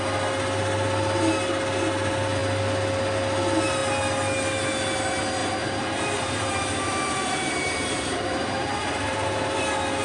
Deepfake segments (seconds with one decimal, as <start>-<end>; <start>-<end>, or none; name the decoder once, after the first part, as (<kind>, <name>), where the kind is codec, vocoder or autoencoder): 5.4-9.6 (vocoder, BigVGAN v2)